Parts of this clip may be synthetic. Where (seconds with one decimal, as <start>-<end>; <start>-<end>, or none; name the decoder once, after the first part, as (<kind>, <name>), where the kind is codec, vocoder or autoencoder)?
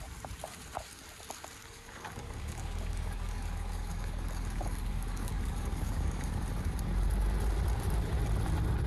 1.6-6.4 (codec, DAC)